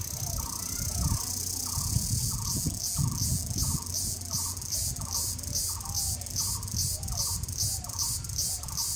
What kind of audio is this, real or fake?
real